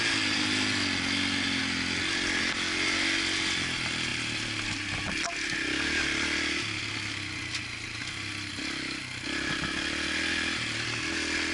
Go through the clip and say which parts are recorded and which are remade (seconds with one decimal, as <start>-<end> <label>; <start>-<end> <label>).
0.0-11.5 recorded